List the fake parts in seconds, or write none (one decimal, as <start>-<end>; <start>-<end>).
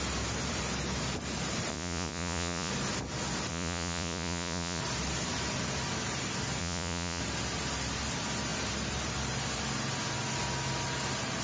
1.7-2.7; 3.5-4.8; 6.6-7.2